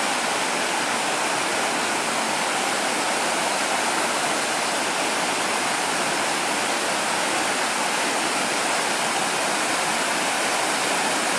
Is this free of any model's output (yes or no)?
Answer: yes